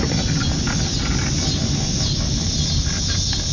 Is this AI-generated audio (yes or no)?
no